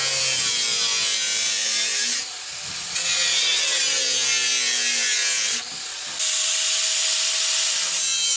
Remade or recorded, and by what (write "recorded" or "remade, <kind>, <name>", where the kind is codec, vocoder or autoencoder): recorded